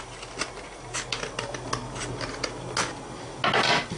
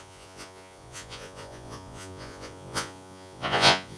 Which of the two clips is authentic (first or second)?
first